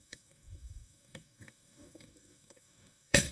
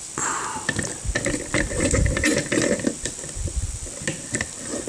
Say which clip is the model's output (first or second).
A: first